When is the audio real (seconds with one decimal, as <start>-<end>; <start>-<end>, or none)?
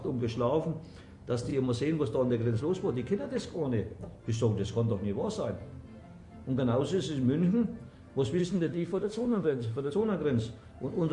0.0-8.4; 9.9-11.1